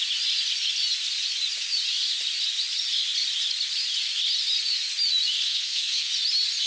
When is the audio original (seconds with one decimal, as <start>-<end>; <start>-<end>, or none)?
0.0-5.4; 6.1-6.7

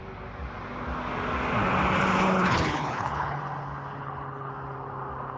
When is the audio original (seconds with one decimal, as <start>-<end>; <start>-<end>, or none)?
0.0-2.1; 3.4-4.0; 4.5-5.4